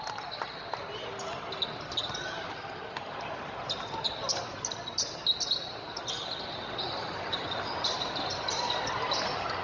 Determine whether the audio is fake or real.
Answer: real